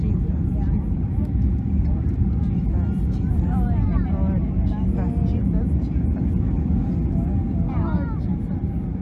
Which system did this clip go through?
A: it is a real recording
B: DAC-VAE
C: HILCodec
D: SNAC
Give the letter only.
A